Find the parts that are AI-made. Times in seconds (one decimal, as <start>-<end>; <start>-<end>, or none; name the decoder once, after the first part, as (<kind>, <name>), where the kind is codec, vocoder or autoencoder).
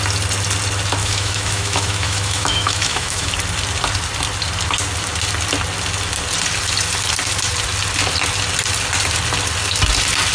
1.0-3.3 (autoencoder, DAC-VAE)